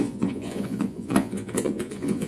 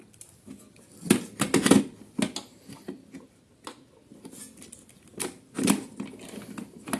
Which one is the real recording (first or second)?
second